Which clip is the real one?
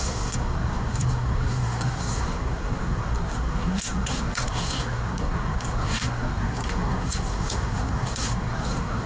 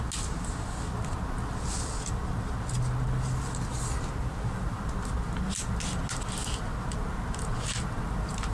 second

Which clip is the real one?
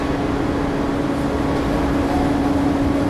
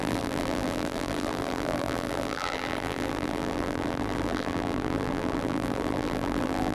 first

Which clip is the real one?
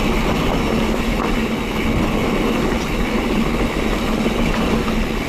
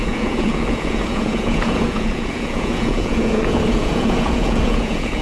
first